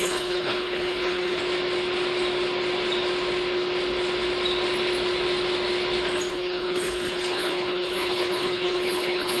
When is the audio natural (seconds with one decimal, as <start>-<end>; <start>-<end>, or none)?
1.4-6.3